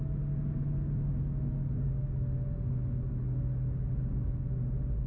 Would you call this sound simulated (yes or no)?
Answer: no